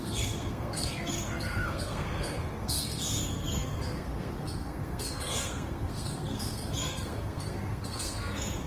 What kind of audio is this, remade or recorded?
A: remade